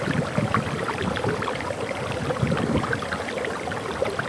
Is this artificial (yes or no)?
no